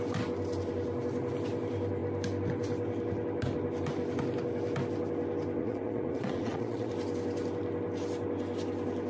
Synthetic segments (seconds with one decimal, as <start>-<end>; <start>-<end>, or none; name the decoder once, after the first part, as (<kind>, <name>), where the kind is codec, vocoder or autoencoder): 5.6-6.9 (vocoder, Vocos)